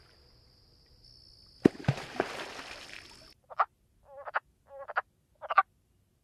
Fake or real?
real